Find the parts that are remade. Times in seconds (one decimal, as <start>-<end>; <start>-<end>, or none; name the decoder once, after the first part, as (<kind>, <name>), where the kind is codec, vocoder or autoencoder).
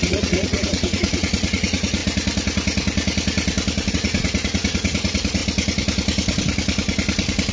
0.0-2.0 (vocoder, Vocos); 3.9-5.4